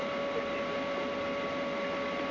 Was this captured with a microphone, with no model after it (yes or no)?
yes